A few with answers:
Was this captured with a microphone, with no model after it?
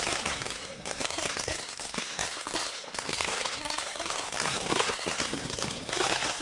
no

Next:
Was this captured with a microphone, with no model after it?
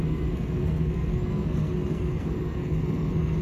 no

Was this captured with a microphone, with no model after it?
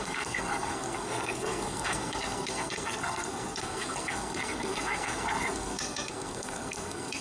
no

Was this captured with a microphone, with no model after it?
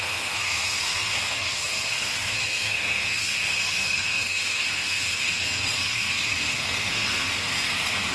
no